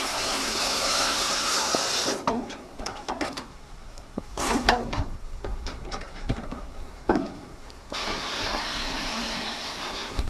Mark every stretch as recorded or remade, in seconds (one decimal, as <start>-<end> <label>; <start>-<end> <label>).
0.0-1.7 remade; 1.7-2.3 recorded; 2.3-10.3 remade